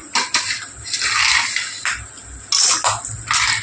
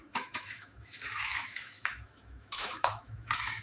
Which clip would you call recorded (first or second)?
first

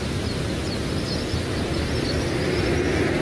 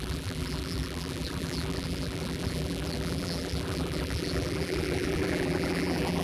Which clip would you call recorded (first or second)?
first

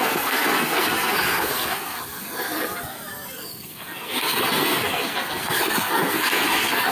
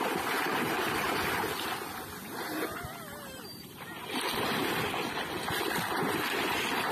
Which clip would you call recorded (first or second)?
second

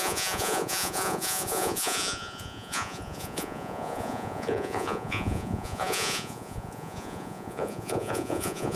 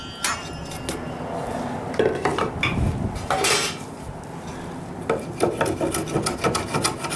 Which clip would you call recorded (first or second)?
second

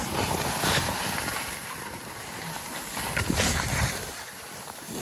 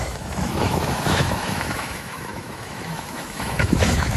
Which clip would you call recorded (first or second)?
first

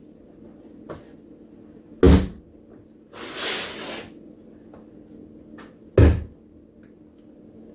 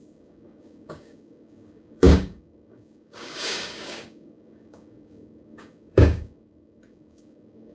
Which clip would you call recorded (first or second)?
first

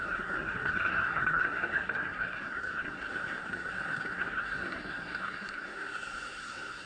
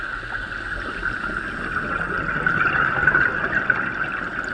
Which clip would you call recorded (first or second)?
second